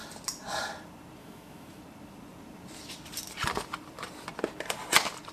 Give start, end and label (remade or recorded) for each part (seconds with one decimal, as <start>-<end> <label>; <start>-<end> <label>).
0.0-1.2 recorded; 1.2-1.8 remade; 1.8-5.3 recorded

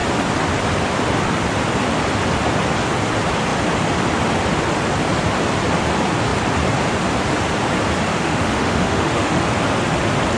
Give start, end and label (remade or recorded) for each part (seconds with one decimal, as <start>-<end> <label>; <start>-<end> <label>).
0.0-8.1 recorded; 8.1-9.4 remade; 9.4-10.4 recorded

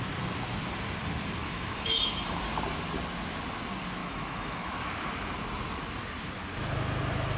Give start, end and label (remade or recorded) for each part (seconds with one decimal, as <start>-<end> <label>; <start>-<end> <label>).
0.0-1.4 recorded; 1.4-2.4 remade; 2.4-4.0 recorded; 4.0-4.7 remade; 4.7-7.4 recorded

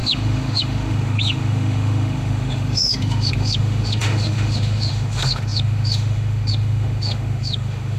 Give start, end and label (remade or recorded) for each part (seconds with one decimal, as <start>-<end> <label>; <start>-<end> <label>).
0.0-8.0 remade

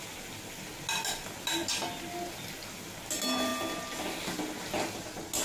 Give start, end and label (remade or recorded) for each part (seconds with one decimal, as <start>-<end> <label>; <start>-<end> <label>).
0.0-5.4 recorded

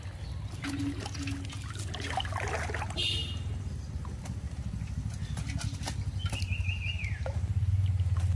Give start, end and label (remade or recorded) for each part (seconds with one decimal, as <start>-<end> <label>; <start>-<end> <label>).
0.0-8.4 recorded

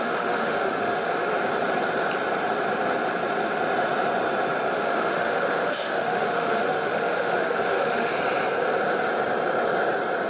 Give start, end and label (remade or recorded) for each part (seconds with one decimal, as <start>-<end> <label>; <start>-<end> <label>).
0.0-1.3 remade; 1.3-4.7 recorded; 4.7-8.1 remade; 8.1-10.3 recorded

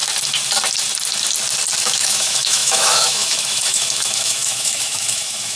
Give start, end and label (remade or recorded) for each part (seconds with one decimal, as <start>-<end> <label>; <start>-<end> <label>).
0.0-1.8 recorded; 1.8-5.6 remade